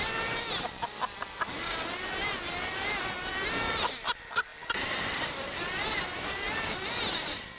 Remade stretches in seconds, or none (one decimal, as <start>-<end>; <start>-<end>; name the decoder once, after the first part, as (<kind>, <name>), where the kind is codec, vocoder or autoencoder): 4.5-7.6 (vocoder, BigVGAN v2)